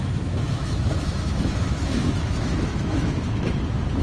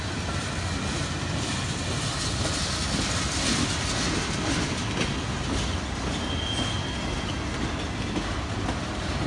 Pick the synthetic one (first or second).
first